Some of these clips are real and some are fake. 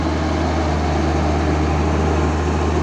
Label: real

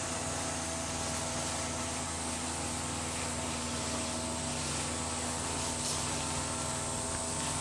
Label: real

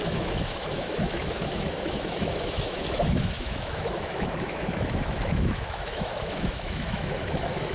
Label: fake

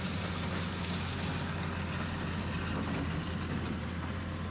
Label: real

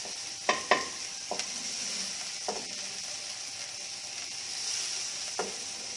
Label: real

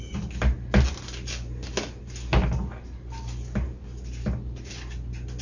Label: real